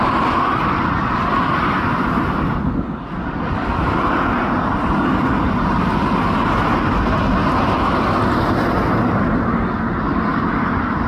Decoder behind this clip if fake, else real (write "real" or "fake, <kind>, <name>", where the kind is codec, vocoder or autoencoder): real